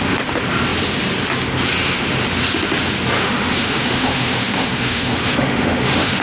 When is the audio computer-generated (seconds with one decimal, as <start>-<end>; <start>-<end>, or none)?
3.2-6.2